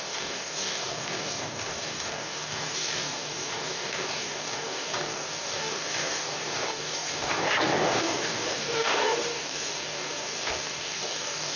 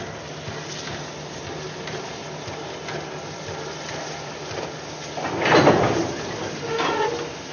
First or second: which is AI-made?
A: first